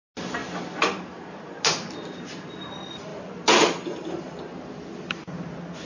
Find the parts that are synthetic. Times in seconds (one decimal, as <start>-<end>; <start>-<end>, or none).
none